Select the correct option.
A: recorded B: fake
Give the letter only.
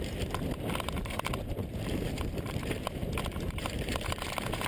B